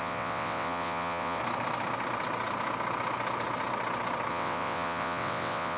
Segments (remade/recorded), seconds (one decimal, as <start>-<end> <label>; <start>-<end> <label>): 0.0-1.4 remade; 1.4-4.3 recorded; 4.3-5.8 remade